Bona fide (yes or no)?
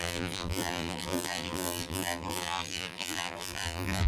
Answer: no